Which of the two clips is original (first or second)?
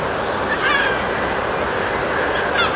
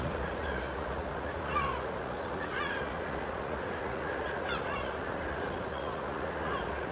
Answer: first